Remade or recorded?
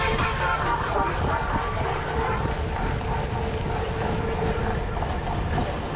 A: recorded